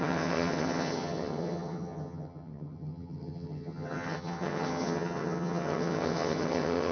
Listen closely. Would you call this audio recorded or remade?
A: remade